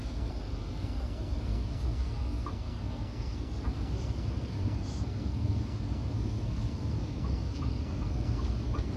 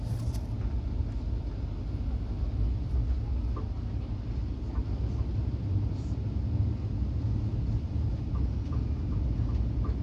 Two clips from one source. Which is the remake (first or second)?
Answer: first